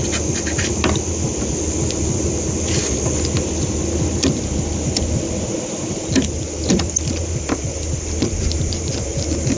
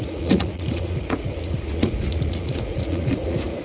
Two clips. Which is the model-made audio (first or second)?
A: second